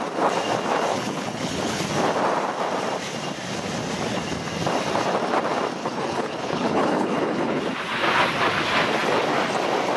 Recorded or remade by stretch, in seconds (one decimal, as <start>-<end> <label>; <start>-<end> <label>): 0.0-0.9 recorded; 0.9-1.8 remade; 1.8-5.8 recorded; 5.8-7.6 remade; 7.6-10.0 recorded